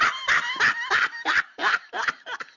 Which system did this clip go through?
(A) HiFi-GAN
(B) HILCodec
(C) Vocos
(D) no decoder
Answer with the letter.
D